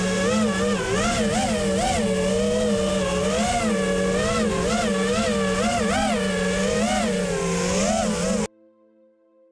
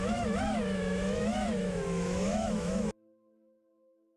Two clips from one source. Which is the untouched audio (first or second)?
first